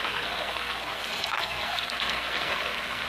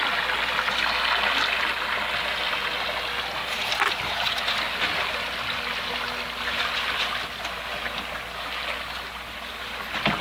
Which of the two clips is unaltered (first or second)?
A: second